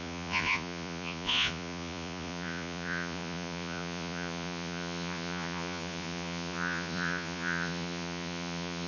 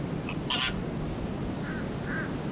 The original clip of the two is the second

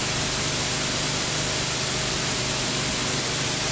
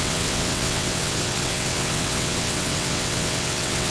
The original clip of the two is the first